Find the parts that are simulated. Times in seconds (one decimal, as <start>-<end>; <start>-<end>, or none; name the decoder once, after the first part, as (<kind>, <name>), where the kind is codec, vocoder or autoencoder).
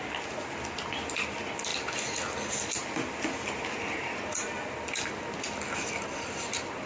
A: none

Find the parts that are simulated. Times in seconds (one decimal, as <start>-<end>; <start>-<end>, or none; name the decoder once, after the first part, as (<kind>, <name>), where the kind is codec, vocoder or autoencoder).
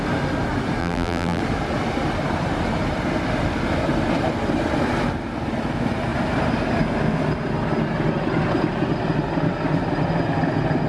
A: 0.8-1.4 (vocoder, BigVGAN v2)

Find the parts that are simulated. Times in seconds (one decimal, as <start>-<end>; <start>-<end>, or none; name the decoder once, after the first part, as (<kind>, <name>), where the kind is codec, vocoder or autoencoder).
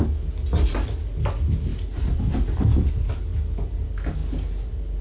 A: none